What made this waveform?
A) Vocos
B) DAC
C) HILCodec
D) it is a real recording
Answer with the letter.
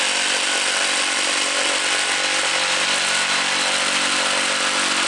D